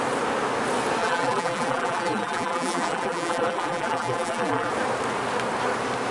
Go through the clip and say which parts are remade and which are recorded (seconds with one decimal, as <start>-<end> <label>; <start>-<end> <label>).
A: 0.0-1.0 recorded; 1.0-4.7 remade; 4.7-6.1 recorded